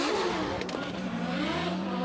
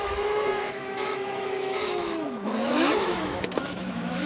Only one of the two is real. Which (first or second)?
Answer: first